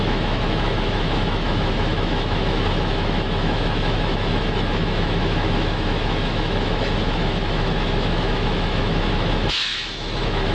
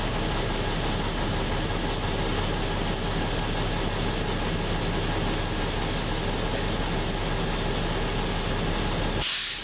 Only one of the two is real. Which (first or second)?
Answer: second